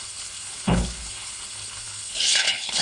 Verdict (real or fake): fake